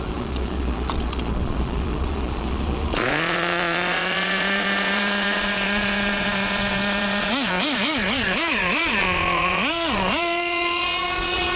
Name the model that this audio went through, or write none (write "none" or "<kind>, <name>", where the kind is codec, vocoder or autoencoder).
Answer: vocoder, Vocos